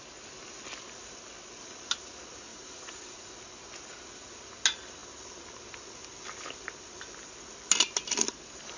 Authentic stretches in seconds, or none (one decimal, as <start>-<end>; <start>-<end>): 0.0-2.5; 3.3-8.8